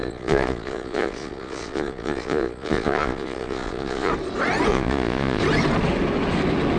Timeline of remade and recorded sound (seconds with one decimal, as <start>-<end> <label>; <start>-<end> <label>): 0.0-4.1 remade; 4.1-4.7 recorded; 4.7-5.4 remade; 5.4-6.8 recorded